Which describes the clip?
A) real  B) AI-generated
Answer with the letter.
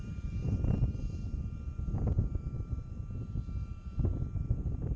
B